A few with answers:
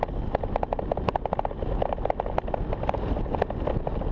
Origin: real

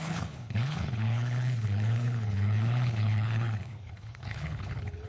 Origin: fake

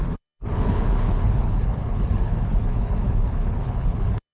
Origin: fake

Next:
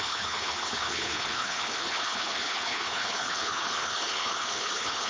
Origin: fake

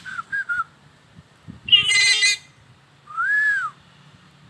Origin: real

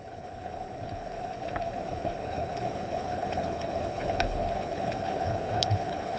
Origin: fake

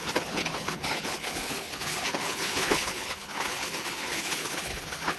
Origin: fake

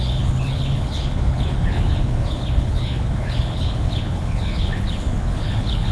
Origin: fake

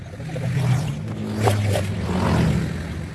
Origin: real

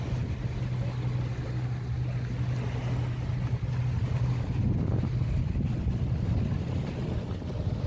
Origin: real